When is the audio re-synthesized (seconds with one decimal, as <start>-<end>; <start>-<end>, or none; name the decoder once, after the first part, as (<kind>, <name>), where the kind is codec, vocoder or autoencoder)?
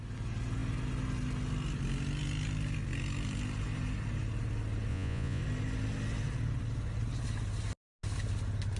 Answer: 4.9-5.4 (vocoder, Vocos)